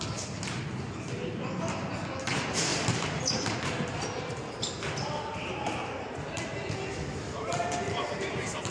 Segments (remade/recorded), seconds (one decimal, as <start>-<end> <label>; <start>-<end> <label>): 0.0-8.7 recorded